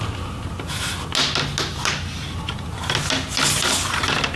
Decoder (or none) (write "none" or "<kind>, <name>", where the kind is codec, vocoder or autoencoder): none